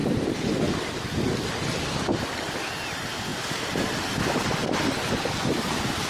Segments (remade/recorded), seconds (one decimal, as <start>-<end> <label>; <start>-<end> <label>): 0.0-6.1 recorded